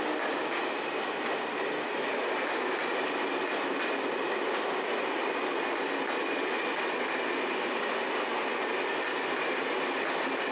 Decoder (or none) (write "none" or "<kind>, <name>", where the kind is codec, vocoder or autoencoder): none